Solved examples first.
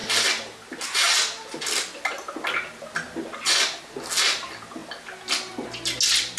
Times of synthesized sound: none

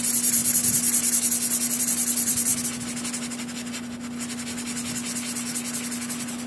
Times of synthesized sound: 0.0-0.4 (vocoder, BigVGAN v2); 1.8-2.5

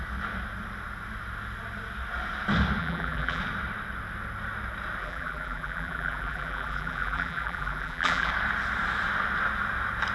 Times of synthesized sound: 2.8-3.4 (vocoder, BigVGAN v2); 5.0-8.3

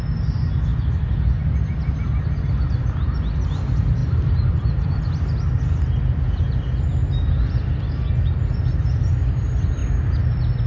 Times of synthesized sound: 4.0-5.0 (vocoder, BigVGAN v2)

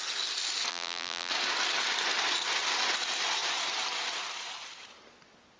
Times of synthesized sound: 0.7-1.3 (vocoder, BigVGAN v2)

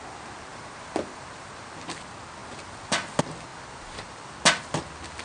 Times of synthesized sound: 0.5-1.5 (vocoder, BigVGAN v2); 3.5-4.2